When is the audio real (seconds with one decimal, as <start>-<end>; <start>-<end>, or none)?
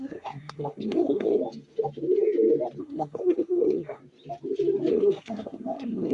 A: 1.4-2.8; 4.0-4.9